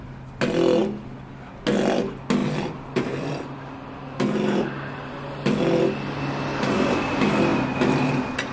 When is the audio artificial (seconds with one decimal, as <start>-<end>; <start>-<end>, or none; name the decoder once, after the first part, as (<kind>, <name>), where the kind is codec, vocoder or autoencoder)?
2.4-7.1 (vocoder, BigVGAN v2); 7.5-8.1